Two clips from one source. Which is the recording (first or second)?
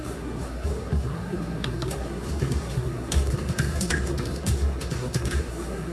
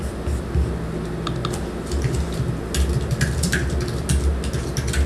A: second